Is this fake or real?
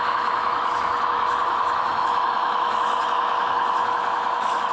fake